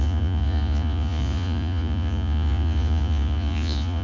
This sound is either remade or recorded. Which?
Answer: remade